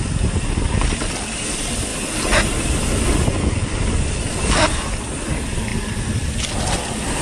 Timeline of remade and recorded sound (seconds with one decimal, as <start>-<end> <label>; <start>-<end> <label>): 0.0-7.2 remade